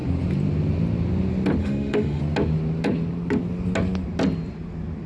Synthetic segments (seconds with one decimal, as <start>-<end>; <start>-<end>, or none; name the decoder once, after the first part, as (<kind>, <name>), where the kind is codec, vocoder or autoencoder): 1.6-2.2 (autoencoder, DAC-VAE)